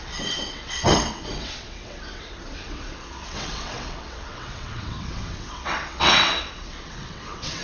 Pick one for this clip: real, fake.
fake